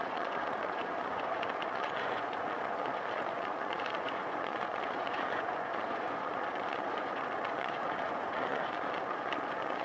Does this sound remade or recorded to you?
remade